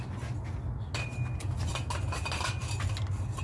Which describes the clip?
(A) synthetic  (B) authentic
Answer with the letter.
B